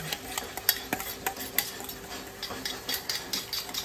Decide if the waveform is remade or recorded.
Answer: recorded